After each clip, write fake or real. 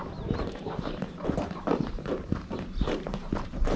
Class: fake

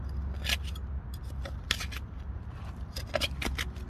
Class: real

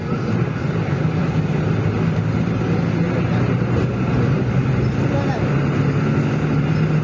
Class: real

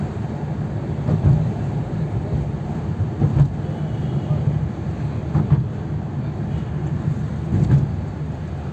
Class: real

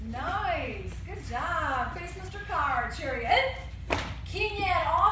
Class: real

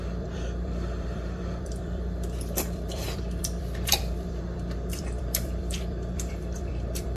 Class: fake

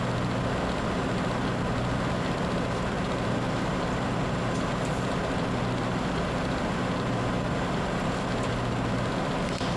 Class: real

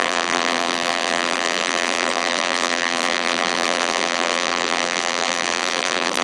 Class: fake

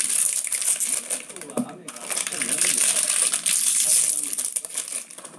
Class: real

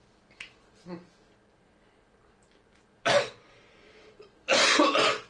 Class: fake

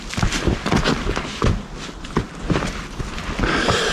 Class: real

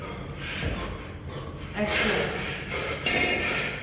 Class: real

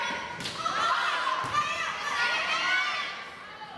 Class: real